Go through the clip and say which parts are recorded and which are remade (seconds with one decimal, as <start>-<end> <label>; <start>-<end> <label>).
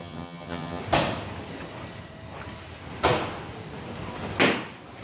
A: 0.0-0.8 remade; 0.8-5.0 recorded